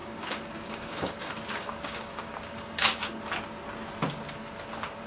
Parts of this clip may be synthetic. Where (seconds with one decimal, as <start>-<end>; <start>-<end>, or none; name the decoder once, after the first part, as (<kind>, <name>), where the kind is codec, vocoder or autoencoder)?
0.0-3.1 (codec, DAC)